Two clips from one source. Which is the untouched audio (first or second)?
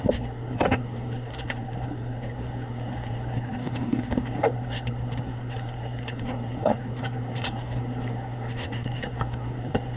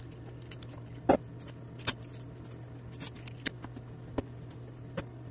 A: second